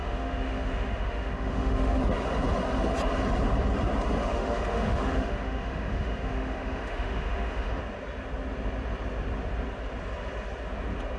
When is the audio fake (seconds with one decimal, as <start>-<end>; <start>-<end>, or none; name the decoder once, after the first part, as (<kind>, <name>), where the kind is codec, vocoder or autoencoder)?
0.0-2.0 (autoencoder, DAC-VAE); 4.2-7.8